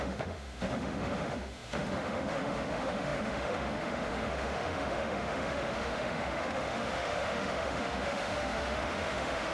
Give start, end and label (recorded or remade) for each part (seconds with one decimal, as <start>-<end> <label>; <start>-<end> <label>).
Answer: 0.0-9.5 remade